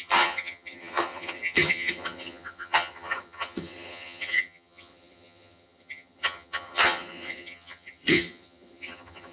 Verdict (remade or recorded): remade